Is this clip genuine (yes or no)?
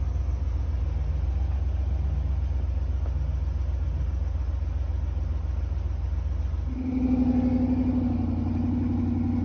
yes